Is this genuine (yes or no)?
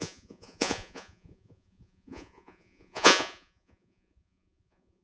no